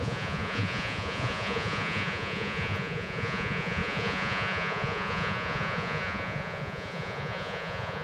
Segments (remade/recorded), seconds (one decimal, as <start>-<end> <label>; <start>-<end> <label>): 0.0-8.0 remade